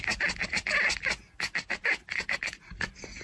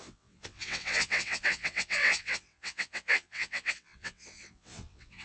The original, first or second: first